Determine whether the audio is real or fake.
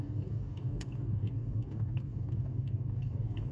fake